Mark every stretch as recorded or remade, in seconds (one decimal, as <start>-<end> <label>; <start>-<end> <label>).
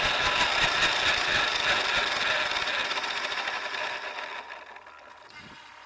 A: 0.0-5.9 recorded